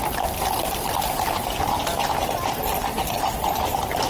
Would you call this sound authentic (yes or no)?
no